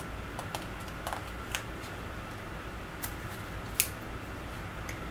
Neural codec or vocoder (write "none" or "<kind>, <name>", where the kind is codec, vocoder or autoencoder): none